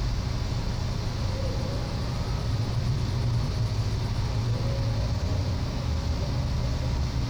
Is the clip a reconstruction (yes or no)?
no